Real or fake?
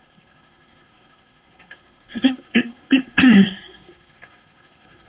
fake